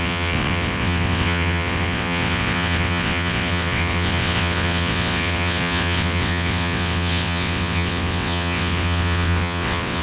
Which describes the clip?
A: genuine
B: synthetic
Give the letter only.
B